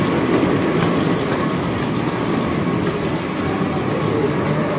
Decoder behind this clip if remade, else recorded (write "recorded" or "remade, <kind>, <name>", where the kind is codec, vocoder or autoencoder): recorded